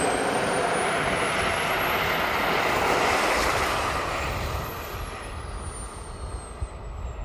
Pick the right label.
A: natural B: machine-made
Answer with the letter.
A